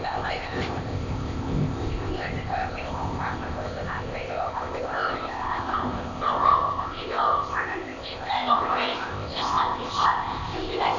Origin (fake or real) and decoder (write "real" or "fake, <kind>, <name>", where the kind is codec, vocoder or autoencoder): fake, codec, ZipCodec